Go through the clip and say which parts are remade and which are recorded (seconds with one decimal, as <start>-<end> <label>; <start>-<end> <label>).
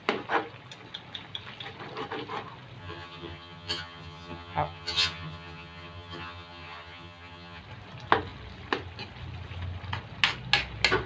0.0-2.8 recorded; 2.8-7.6 remade; 7.6-11.1 recorded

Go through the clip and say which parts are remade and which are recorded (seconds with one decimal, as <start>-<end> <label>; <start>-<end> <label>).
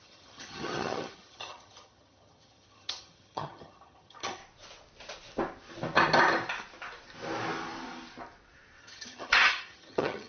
0.0-4.4 remade; 4.4-8.8 recorded; 8.8-10.3 remade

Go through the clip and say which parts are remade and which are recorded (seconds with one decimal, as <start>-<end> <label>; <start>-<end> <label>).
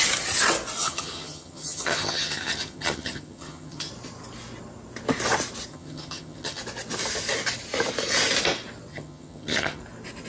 0.0-0.8 recorded; 0.8-3.9 remade; 3.9-5.7 recorded; 5.7-6.6 remade; 6.6-8.9 recorded; 8.9-9.8 remade; 9.8-10.3 recorded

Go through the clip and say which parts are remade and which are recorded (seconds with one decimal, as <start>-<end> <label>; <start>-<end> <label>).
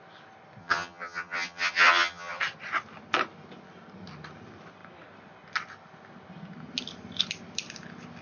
0.0-0.6 recorded; 0.6-2.4 remade; 2.4-8.2 recorded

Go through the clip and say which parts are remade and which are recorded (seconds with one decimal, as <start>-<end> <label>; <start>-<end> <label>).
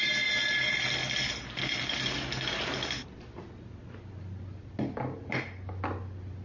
0.0-6.4 recorded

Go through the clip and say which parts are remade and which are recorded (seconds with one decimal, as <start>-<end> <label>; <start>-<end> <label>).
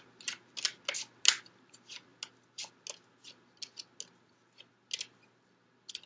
0.0-6.1 recorded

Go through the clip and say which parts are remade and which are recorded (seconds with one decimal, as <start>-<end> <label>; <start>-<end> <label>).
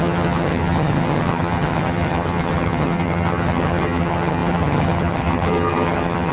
0.0-6.3 remade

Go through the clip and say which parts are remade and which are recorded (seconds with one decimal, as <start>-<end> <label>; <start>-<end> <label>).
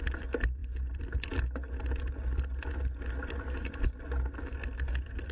0.0-5.3 recorded